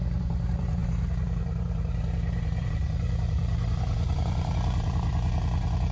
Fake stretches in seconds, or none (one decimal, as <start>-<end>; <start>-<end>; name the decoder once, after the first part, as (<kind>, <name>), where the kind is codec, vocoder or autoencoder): 0.0-5.9 (vocoder, BigVGAN v2)